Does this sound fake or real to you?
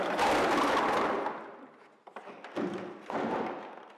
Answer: real